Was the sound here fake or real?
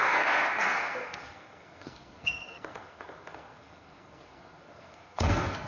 fake